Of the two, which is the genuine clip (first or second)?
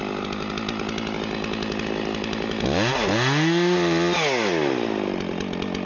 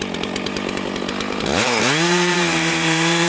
first